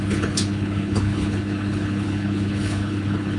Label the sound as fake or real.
fake